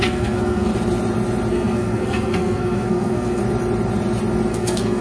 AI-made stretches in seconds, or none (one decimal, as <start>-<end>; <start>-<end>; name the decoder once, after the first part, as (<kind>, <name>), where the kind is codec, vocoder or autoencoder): 0.0-0.7 (codec, SNAC); 1.5-3.4; 4.5-5.0